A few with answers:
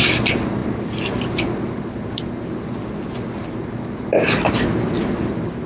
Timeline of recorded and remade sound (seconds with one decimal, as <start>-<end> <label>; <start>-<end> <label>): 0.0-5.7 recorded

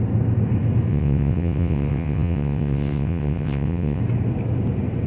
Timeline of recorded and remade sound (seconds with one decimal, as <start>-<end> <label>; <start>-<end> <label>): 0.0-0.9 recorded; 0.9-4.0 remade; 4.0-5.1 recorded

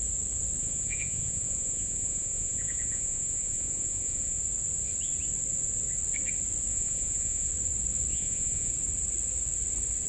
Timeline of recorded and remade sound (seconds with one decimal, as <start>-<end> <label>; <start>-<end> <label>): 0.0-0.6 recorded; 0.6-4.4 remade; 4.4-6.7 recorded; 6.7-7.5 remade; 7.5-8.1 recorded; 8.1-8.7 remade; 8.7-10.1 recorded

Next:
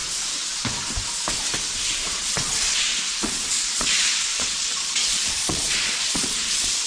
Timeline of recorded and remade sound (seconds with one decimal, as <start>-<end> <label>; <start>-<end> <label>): 0.0-2.1 recorded; 2.1-6.9 remade

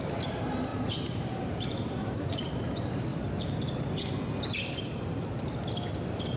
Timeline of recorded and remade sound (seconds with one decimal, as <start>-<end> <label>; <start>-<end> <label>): 0.0-0.7 recorded; 0.7-2.5 remade; 2.5-6.4 recorded

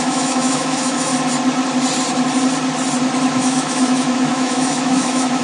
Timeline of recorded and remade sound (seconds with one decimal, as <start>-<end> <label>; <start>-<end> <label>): 0.0-1.1 remade; 1.1-3.3 recorded; 3.3-5.4 remade

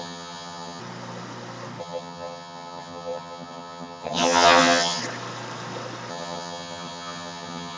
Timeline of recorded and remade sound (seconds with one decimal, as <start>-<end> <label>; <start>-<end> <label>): 0.0-0.8 remade; 0.8-1.8 recorded; 1.8-5.0 remade; 5.0-6.1 recorded; 6.1-7.8 remade